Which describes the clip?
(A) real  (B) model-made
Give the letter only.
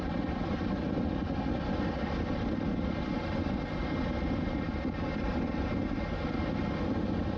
A